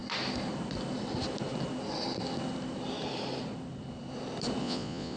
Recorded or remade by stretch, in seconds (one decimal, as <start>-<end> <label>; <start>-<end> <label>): 0.0-4.6 recorded; 4.6-5.2 remade